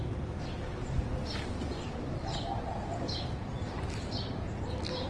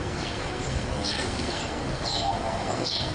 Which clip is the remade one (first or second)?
second